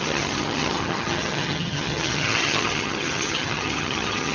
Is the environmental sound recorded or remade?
remade